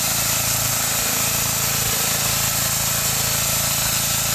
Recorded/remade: recorded